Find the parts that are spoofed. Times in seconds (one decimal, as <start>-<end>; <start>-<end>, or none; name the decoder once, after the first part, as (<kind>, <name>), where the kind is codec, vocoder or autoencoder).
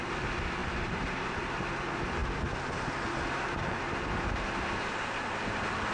0.6-1.5 (vocoder, BigVGAN v2)